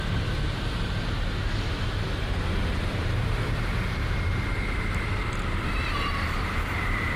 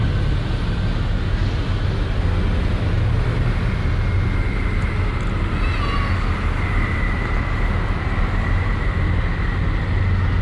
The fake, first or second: first